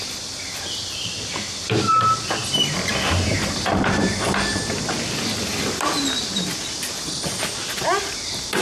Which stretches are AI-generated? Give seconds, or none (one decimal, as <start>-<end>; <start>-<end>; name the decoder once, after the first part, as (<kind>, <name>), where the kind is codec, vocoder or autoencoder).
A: 0.0-8.6 (vocoder, BigVGAN v2)